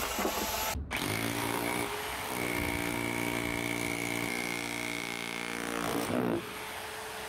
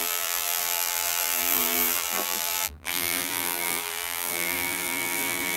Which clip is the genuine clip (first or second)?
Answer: first